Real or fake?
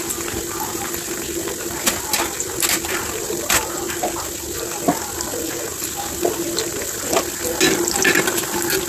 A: real